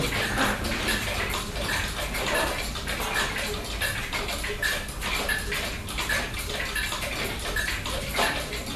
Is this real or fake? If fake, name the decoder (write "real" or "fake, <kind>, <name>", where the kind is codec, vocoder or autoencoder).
real